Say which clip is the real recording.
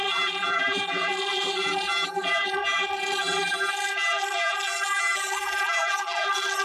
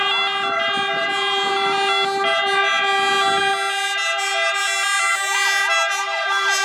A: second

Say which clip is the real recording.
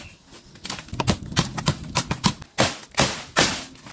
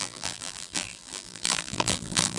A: first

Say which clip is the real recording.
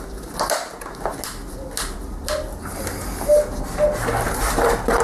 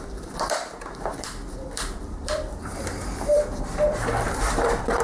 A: first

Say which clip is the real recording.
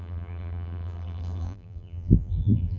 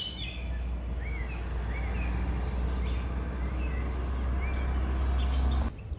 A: second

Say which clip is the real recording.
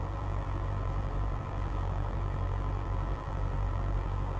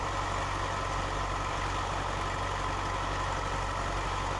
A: second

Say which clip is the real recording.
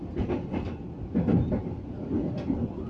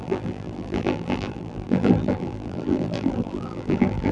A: first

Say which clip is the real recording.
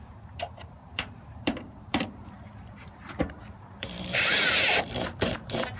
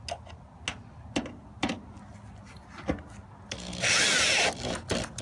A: second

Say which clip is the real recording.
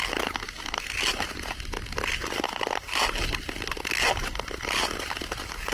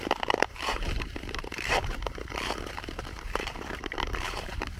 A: first